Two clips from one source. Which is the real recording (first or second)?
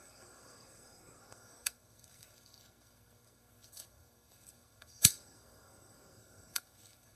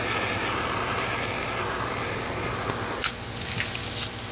second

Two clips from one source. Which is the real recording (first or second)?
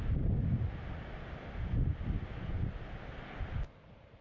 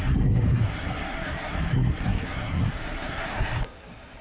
first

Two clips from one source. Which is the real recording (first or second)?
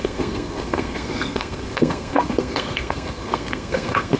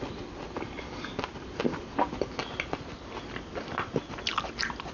second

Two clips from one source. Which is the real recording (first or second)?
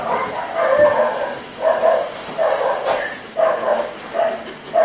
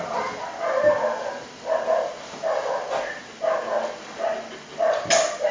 second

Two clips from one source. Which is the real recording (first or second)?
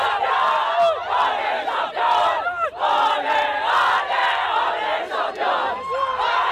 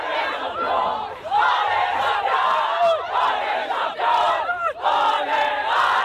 first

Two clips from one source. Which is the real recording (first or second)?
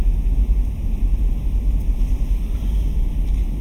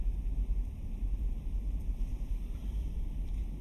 first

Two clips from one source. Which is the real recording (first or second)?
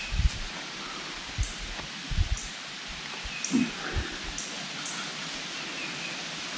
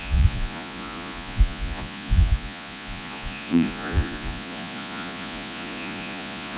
first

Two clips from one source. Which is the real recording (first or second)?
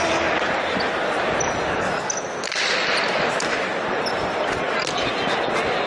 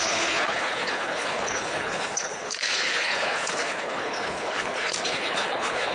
first